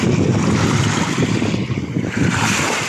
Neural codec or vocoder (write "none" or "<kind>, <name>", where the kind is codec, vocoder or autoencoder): none